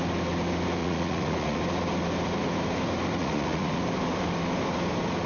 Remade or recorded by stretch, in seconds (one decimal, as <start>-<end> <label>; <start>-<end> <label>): 0.0-0.8 recorded; 0.8-1.6 remade; 1.6-3.2 recorded; 3.2-3.8 remade; 3.8-5.3 recorded